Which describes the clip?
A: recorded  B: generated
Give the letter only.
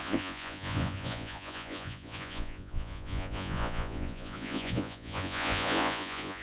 B